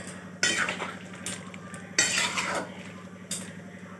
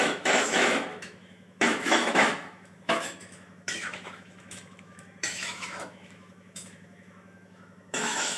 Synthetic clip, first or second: second